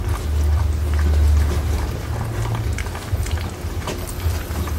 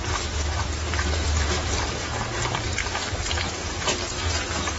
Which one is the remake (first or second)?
second